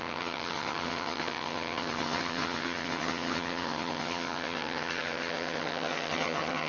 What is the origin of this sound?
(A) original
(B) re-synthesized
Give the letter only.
B